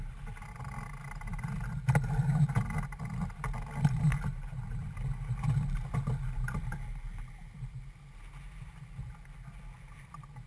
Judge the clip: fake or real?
real